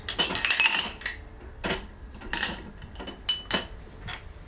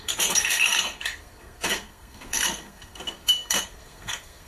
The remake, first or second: second